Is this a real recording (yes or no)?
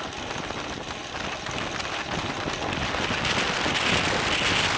yes